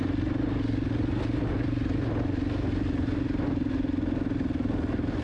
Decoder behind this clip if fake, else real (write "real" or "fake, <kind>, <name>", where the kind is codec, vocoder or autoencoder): real